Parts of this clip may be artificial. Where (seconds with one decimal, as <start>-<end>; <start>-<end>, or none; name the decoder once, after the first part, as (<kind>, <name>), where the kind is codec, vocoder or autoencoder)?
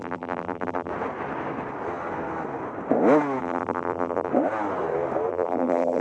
0.0-0.9 (vocoder, BigVGAN v2); 3.4-4.3; 5.3-6.0